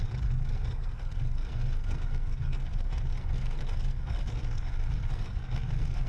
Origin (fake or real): fake